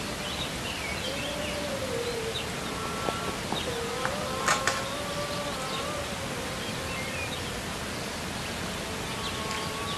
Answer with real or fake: real